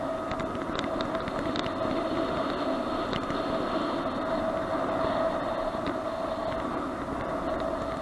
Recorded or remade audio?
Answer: recorded